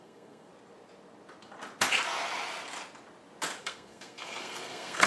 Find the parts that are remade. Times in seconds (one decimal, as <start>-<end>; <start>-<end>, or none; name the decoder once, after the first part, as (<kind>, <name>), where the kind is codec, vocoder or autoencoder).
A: 0.0-0.5 (codec, SNAC); 3.6-5.1